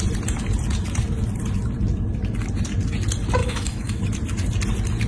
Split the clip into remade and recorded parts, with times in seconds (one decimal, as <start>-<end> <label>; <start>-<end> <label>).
0.0-3.4 recorded; 3.4-4.0 remade; 4.0-5.1 recorded